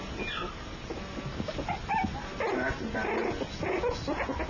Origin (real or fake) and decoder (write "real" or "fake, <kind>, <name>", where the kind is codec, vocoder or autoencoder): real